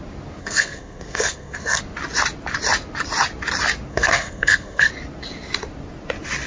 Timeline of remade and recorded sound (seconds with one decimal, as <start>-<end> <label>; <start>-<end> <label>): 0.0-0.4 recorded; 0.4-1.8 remade; 1.8-3.9 recorded; 3.9-4.9 remade; 4.9-6.5 recorded